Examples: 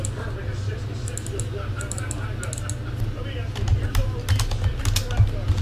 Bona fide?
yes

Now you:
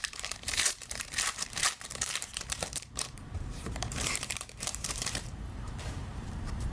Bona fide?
no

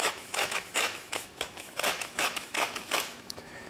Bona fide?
no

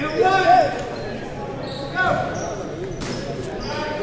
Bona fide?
yes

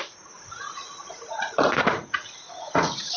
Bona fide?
no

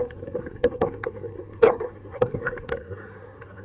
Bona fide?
no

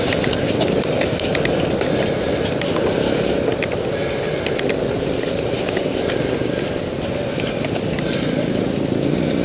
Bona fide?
yes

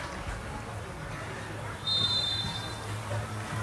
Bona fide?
yes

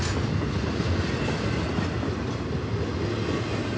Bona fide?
yes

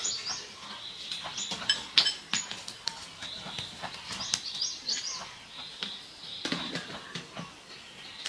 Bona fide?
yes